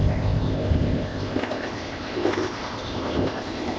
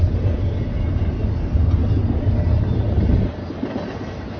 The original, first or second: second